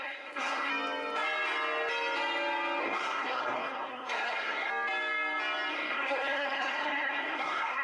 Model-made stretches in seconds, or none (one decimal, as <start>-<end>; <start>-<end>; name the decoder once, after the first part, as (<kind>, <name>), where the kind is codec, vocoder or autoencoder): 0.0-0.7 (codec, SNAC); 2.8-4.7; 5.7-7.8